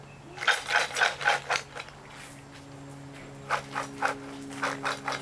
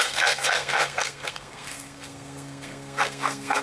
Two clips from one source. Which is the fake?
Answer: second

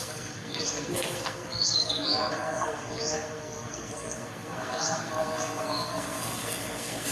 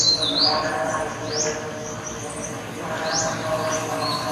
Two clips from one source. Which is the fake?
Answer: first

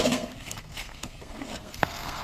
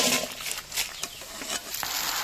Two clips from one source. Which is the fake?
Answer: first